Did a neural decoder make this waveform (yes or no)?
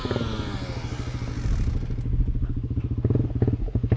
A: no